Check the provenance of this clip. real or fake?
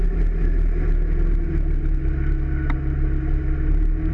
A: real